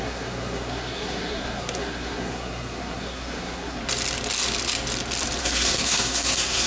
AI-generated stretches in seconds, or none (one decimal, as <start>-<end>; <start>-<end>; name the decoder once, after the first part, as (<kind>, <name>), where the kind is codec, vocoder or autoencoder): 0.0-3.8 (codec, SNAC); 5.4-6.7